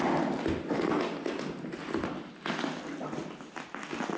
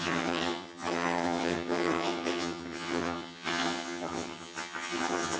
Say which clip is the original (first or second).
first